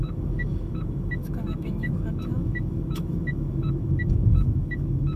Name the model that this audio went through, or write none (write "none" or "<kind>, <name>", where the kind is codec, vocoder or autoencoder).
autoencoder, DAC-VAE